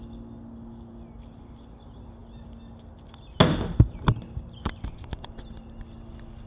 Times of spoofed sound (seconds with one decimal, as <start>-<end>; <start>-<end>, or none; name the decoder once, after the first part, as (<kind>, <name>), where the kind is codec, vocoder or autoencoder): none